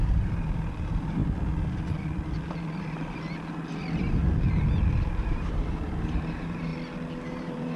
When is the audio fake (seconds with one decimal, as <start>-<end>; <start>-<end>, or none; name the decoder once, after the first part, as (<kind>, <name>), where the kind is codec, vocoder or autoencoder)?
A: 0.0-1.2 (vocoder, BigVGAN v2); 5.1-6.7; 7.3-7.8